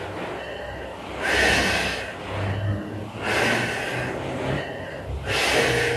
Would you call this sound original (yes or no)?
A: yes